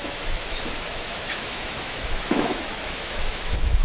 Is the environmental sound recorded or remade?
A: remade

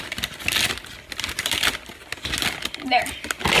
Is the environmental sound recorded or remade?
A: recorded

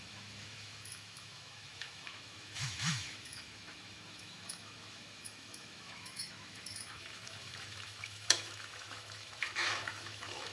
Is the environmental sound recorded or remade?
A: remade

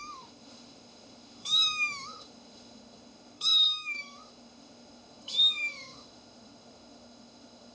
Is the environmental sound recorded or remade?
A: remade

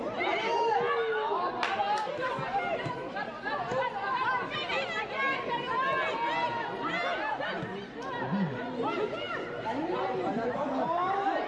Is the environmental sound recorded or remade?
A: recorded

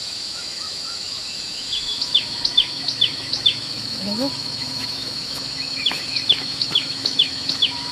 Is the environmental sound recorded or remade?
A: remade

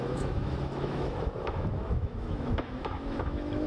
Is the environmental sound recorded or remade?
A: remade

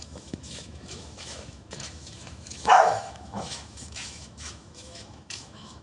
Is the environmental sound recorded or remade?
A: remade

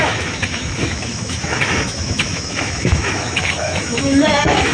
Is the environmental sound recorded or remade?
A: remade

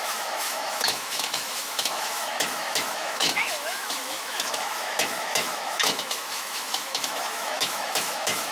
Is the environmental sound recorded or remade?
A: remade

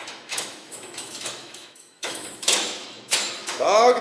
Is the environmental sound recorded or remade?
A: remade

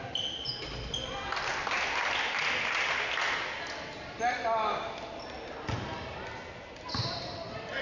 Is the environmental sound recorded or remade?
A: recorded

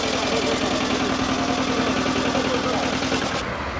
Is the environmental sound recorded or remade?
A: recorded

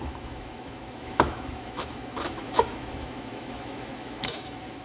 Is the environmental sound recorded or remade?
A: remade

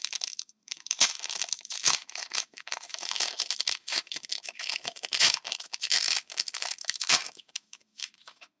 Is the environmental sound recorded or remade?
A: remade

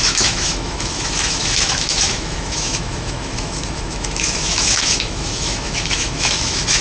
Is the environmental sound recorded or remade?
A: remade